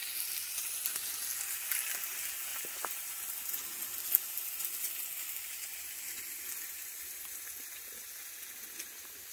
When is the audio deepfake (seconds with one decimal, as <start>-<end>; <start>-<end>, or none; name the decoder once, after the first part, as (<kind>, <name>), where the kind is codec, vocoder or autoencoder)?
6.8-7.4 (vocoder, BigVGAN v2)